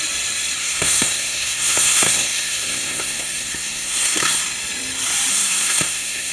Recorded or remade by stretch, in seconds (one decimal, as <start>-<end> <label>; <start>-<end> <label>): 0.0-0.6 recorded; 0.6-4.4 remade; 4.4-5.3 recorded; 5.3-6.3 remade